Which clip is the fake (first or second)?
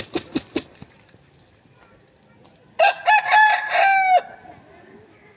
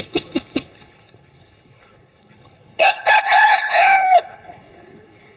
second